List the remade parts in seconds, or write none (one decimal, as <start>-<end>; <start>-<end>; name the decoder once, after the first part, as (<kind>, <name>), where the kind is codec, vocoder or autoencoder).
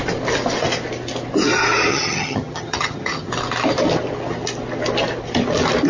1.9-3.3 (vocoder, HiFi-GAN)